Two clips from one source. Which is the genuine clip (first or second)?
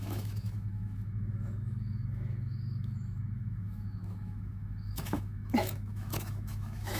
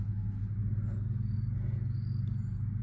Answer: second